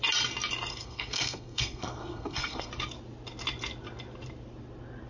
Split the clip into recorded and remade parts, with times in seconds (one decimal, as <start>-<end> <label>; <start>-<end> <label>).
0.0-0.7 recorded; 0.7-2.7 remade; 2.7-5.1 recorded